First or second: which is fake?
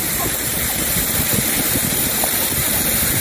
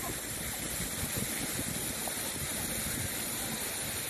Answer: first